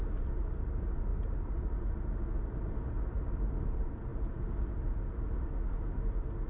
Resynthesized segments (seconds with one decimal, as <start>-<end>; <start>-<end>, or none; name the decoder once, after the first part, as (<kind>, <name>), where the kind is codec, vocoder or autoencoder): 1.1-1.8 (vocoder, BigVGAN v2)